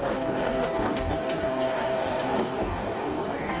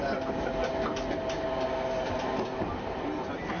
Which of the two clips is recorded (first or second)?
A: second